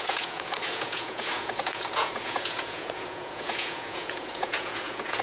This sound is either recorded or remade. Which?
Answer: remade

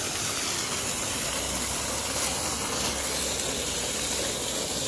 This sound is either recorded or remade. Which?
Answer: recorded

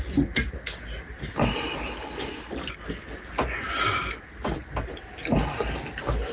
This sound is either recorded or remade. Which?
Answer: recorded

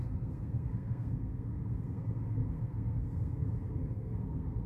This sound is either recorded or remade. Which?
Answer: remade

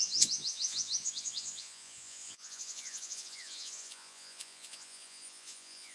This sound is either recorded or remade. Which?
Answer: remade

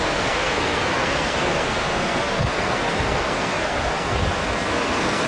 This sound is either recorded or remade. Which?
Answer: remade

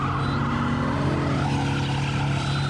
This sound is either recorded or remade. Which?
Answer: recorded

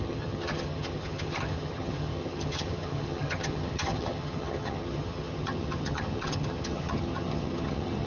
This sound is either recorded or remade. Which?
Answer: remade